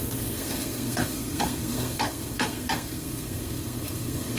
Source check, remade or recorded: remade